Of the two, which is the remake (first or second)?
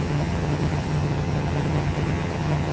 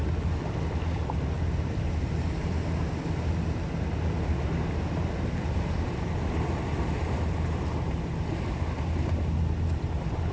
first